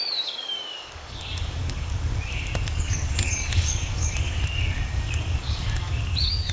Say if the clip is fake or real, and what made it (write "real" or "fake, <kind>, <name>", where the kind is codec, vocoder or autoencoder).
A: fake, codec, DAC